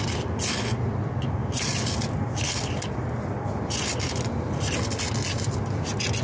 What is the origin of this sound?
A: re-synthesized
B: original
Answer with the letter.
B